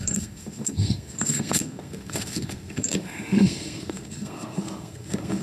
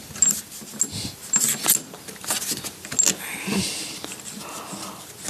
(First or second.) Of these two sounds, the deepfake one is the first